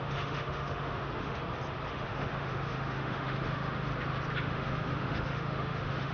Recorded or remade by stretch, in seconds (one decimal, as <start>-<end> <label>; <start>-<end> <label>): 0.0-1.4 remade; 1.4-1.9 recorded; 1.9-3.9 remade; 3.9-4.4 recorded; 4.4-6.1 remade